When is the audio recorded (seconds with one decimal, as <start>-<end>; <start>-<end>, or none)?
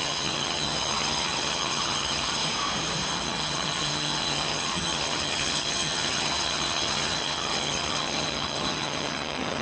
2.4-3.1